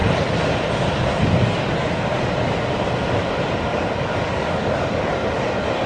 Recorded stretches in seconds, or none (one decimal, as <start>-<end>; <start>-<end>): 0.0-3.7; 5.1-5.9

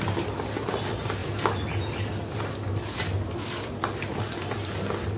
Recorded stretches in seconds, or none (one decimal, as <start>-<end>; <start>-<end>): 1.2-4.3